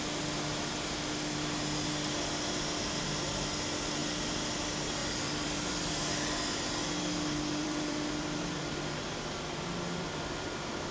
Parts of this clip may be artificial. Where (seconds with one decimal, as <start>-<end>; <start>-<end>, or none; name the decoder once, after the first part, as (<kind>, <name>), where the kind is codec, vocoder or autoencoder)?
5.0-5.7 (vocoder, BigVGAN v2); 7.6-8.7